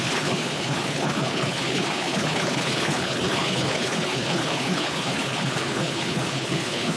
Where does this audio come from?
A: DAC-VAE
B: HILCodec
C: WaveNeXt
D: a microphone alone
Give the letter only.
B